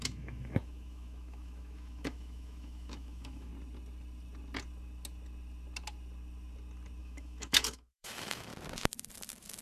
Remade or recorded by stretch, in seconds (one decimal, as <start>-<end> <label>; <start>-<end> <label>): 0.0-3.5 remade; 3.5-7.0 recorded; 7.0-8.5 remade; 8.5-9.6 recorded

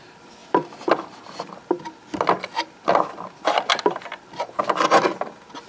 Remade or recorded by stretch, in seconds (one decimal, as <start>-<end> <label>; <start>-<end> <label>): 0.0-0.4 recorded; 0.4-1.5 remade; 1.5-5.7 recorded

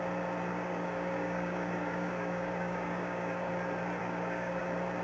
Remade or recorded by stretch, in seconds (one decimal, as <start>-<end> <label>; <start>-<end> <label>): 0.0-0.5 recorded; 0.5-3.5 remade; 3.5-4.0 recorded; 4.0-4.6 remade; 4.6-5.0 recorded

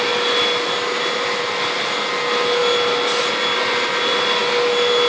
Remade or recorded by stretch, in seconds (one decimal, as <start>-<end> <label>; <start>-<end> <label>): 0.0-5.1 recorded

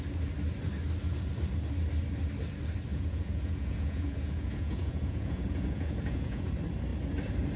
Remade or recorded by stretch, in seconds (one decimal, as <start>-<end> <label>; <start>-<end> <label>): 0.0-2.9 recorded; 2.9-6.4 remade; 6.4-7.6 recorded

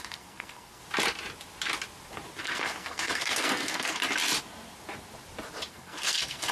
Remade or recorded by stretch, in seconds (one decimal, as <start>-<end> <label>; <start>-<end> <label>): 0.0-0.8 remade; 0.8-2.4 recorded; 2.4-4.0 remade; 4.0-5.7 recorded; 5.7-6.5 remade

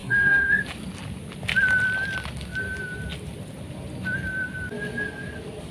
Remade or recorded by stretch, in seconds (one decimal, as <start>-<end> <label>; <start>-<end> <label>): 0.0-0.6 remade; 0.6-5.7 recorded